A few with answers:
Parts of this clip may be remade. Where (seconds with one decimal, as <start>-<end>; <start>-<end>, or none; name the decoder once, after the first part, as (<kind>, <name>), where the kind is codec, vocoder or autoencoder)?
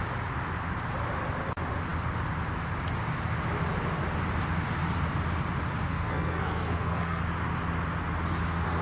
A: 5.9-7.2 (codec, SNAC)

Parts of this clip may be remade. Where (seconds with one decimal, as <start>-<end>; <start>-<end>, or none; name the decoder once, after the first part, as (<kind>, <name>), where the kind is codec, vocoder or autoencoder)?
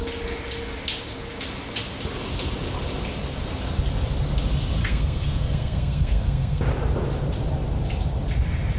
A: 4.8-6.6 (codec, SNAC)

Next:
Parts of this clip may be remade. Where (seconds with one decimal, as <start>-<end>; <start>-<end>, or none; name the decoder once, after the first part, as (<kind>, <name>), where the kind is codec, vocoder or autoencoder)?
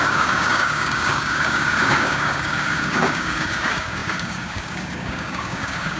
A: 0.0-6.0 (codec, DAC)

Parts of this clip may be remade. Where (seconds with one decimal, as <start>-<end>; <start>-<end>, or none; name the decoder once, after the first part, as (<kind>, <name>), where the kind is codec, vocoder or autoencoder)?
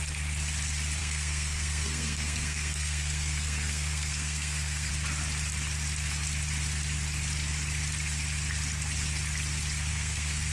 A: 1.0-4.9 (codec, SNAC); 9.9-10.5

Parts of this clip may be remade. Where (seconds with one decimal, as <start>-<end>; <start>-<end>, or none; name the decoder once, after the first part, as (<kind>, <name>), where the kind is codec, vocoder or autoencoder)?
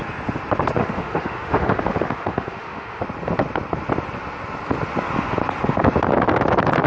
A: 0.8-3.0 (autoencoder, DAC-VAE)